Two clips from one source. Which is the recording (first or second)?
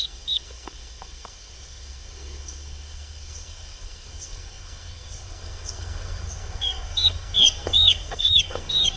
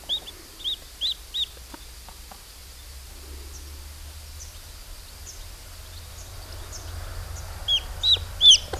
second